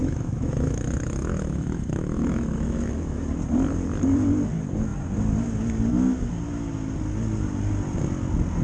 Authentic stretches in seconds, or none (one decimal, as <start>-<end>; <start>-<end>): 3.2-8.6